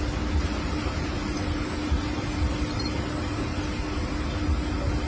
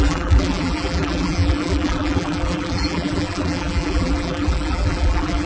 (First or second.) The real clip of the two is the first